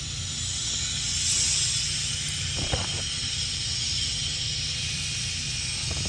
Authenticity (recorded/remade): recorded